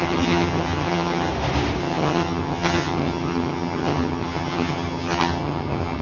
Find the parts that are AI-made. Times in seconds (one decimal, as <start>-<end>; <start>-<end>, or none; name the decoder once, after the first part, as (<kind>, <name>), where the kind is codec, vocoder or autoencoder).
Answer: 0.0-1.3 (vocoder, HiFi-GAN); 1.8-6.0